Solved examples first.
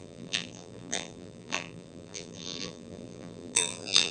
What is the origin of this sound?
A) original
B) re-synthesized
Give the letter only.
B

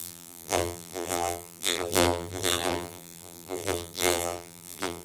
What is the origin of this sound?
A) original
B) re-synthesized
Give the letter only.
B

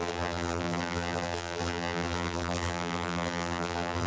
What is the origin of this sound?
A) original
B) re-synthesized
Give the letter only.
B